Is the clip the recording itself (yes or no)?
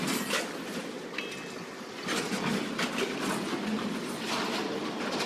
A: yes